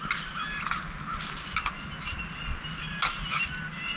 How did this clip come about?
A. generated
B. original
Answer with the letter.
B